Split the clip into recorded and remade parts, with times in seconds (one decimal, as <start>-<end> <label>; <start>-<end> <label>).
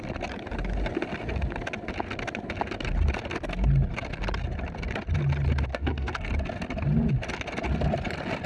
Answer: 0.0-5.7 recorded; 5.7-6.3 remade; 6.3-8.5 recorded